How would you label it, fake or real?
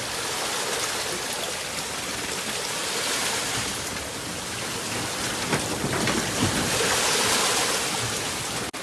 real